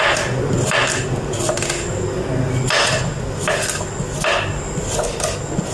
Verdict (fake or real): real